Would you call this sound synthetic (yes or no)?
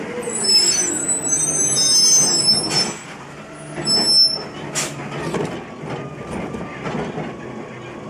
no